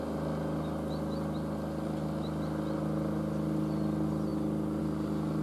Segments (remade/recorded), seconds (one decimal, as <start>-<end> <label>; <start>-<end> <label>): 0.0-5.4 recorded